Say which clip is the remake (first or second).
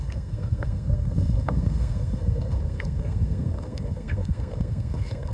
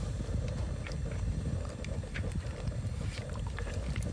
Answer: first